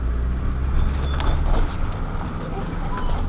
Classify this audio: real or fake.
real